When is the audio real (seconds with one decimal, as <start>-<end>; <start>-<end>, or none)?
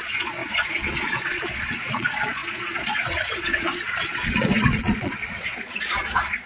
none